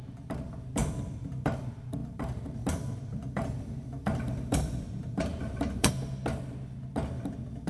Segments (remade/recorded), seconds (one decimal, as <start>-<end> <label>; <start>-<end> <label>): 0.0-0.8 recorded; 0.8-1.6 remade; 1.6-2.0 recorded; 2.0-5.9 remade; 5.9-7.7 recorded